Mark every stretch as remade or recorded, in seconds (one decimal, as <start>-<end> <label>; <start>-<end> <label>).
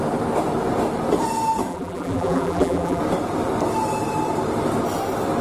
0.0-1.7 recorded; 1.7-3.0 remade; 3.0-5.4 recorded